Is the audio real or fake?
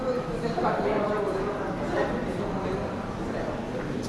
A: real